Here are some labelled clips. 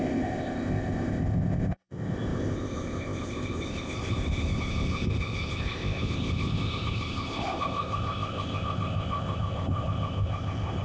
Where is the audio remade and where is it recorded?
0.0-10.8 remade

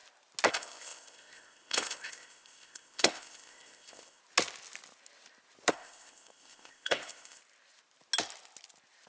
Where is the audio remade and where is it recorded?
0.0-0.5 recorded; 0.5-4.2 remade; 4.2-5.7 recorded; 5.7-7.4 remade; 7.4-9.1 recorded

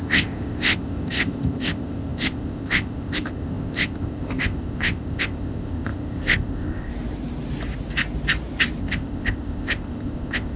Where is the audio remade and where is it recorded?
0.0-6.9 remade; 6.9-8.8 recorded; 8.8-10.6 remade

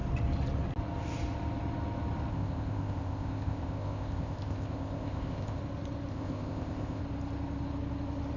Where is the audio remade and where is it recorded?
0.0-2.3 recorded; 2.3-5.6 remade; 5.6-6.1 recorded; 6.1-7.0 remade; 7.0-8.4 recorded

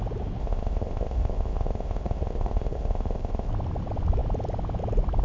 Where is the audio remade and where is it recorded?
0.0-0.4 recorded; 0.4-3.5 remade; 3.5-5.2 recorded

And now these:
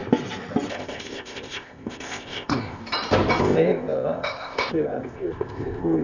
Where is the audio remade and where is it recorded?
0.0-0.7 recorded; 0.7-2.8 remade; 2.8-3.4 recorded; 3.4-6.0 remade

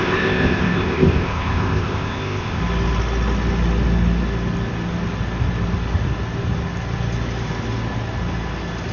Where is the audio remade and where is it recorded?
0.0-2.6 remade; 2.6-8.9 recorded